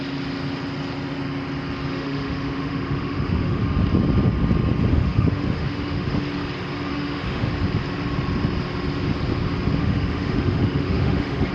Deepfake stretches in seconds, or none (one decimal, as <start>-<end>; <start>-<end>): 1.9-3.6; 4.9-6.2; 6.9-7.5; 9.8-11.5